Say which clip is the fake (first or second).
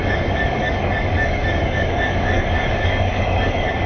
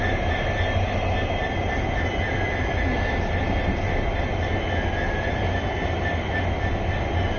first